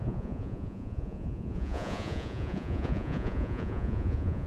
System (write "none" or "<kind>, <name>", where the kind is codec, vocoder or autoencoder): vocoder, Vocos